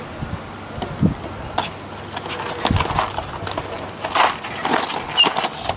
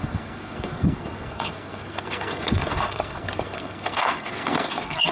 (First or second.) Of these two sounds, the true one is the first